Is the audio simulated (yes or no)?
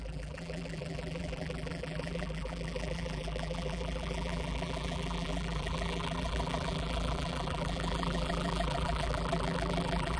yes